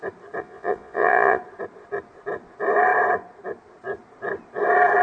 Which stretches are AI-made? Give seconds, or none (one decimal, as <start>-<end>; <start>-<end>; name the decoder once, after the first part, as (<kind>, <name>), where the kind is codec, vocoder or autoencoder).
0.4-1.4 (vocoder, Vocos)